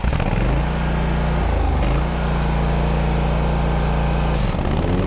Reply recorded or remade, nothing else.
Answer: recorded